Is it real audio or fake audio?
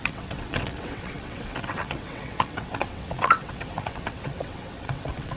fake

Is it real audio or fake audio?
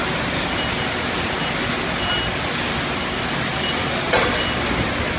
real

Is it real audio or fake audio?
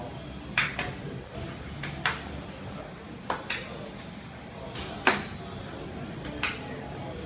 real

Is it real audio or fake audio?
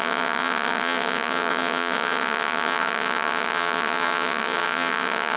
fake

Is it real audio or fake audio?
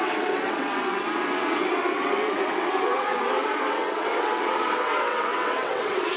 fake